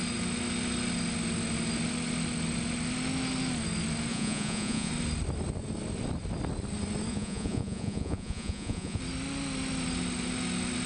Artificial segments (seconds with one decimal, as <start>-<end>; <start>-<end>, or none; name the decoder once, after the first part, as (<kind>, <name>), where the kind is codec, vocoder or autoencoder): 4.1-4.9 (vocoder, Vocos); 7.1-9.0